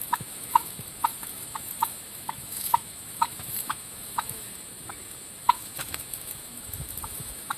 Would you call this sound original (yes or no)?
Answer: no